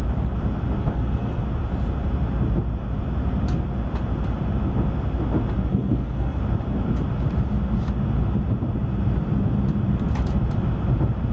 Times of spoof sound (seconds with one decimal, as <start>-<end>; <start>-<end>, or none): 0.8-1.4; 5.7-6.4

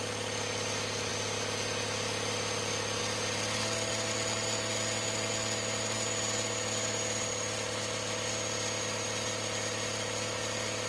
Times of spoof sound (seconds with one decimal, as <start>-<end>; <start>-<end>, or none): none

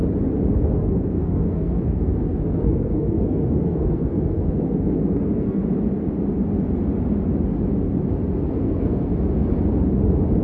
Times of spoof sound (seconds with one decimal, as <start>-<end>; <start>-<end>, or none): 0.5-5.6; 8.5-9.1

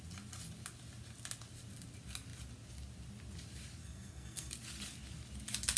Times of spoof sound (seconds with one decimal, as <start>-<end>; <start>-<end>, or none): 3.8-4.5

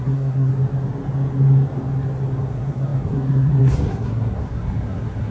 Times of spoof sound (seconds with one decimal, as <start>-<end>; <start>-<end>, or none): 0.0-0.5; 2.4-5.3